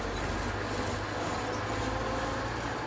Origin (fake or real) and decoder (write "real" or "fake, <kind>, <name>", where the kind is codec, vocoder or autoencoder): real